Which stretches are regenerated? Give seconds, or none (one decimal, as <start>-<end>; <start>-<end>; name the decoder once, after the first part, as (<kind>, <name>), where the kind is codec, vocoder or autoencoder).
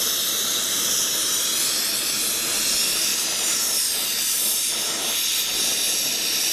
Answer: none